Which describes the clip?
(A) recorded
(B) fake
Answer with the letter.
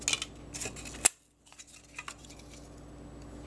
A